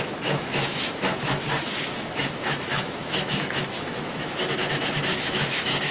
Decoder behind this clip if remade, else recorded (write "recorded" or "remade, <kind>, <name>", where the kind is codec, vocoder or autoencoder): remade, autoencoder, DAC-VAE